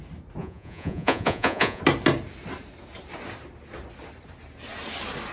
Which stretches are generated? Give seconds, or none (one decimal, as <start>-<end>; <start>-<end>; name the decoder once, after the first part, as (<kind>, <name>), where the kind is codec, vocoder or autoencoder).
0.4-1.8 (vocoder, Vocos)